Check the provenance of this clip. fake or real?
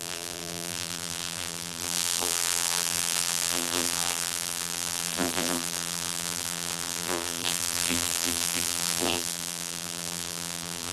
fake